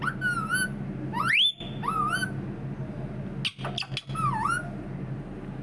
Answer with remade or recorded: recorded